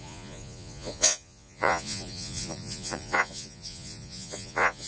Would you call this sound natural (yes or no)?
no